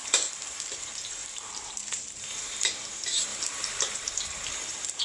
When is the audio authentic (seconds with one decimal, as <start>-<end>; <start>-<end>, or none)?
0.0-0.5

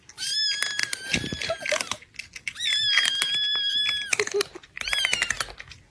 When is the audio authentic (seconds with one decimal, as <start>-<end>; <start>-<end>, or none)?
0.0-0.8; 3.2-5.9

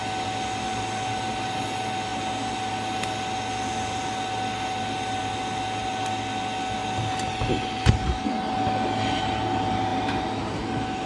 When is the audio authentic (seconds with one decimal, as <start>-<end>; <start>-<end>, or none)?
0.0-9.9; 10.6-11.1